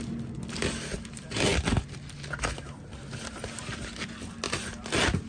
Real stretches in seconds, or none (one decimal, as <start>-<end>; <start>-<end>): 0.0-5.3